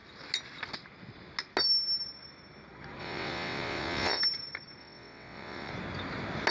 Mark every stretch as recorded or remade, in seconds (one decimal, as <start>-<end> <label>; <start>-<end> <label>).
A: 0.0-3.0 recorded; 3.0-4.2 remade; 4.2-4.8 recorded; 4.8-5.7 remade; 5.7-6.5 recorded